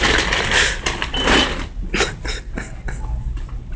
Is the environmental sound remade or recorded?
recorded